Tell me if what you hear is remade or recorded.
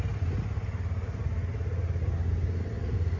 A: recorded